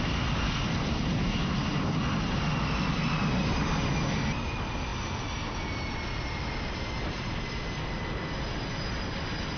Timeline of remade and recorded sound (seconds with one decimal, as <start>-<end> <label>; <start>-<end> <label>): 0.0-9.6 recorded